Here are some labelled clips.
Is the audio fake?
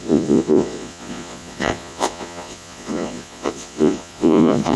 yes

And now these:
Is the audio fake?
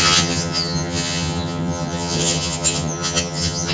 yes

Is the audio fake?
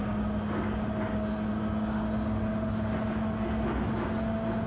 no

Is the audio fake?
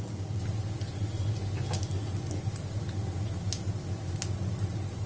no